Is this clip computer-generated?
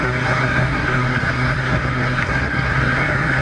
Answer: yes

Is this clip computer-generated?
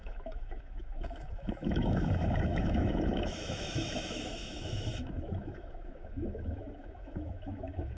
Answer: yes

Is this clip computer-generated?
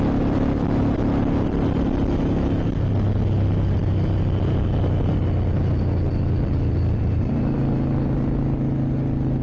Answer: no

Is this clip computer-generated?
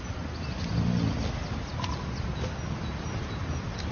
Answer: no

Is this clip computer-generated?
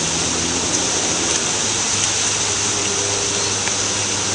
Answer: no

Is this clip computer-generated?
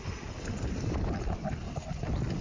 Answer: no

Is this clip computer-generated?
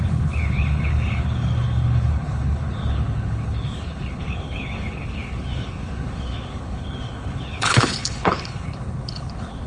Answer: yes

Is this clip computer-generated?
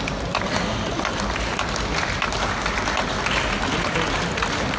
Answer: no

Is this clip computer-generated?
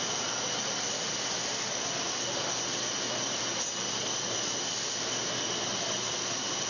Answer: no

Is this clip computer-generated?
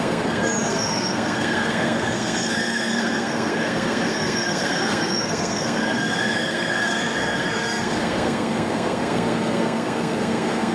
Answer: yes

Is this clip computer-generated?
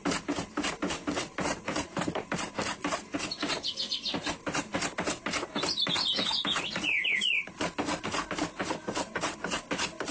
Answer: no